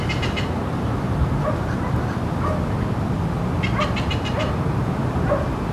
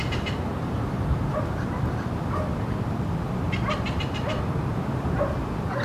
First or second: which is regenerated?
second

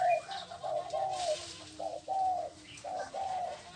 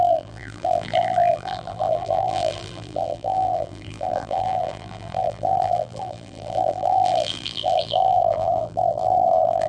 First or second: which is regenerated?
second